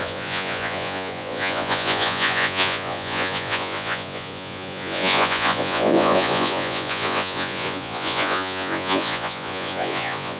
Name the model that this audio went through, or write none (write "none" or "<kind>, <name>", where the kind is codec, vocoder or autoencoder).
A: vocoder, Vocos